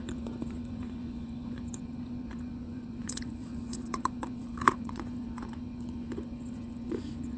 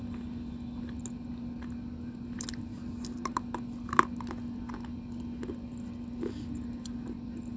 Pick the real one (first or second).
second